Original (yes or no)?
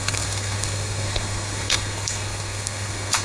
no